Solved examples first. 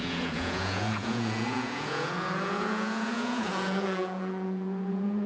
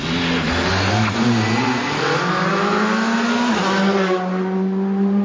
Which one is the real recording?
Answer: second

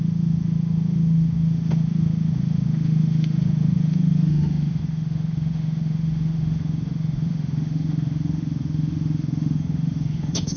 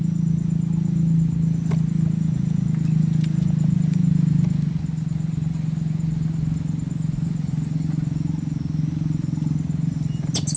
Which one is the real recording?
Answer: second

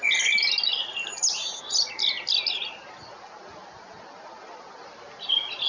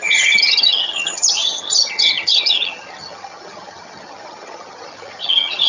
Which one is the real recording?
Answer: first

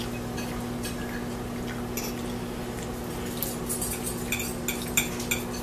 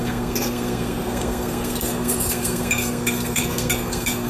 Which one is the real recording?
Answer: first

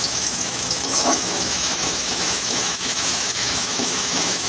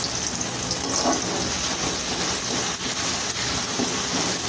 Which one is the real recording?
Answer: second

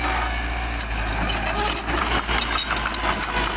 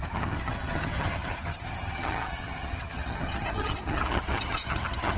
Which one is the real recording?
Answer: first